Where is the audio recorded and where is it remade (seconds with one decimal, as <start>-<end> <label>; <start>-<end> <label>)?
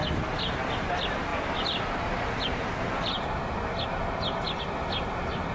0.0-5.5 recorded